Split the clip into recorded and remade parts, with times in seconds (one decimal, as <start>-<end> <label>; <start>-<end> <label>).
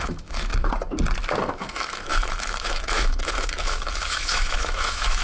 0.0-0.5 remade; 0.5-1.4 recorded; 1.4-5.2 remade